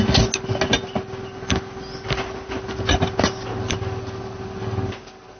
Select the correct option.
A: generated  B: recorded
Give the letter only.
B